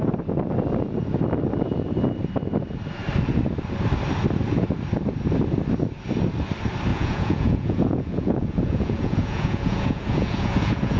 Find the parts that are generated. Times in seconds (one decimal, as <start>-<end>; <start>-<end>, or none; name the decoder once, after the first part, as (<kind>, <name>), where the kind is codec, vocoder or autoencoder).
6.9-11.0 (vocoder, Vocos)